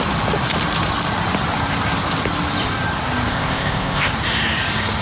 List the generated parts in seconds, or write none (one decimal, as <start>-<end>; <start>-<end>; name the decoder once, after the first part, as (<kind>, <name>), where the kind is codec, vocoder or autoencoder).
3.3-4.1 (codec, ZipCodec)